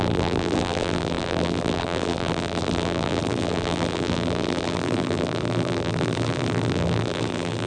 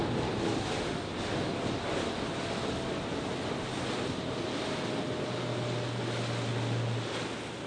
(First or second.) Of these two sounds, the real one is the second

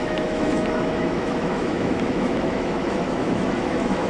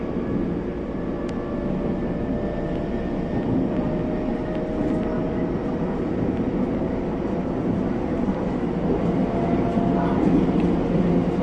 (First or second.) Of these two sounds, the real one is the second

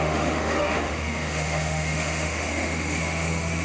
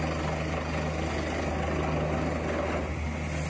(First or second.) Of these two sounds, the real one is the second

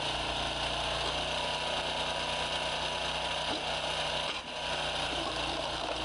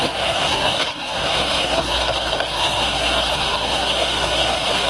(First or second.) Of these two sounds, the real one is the first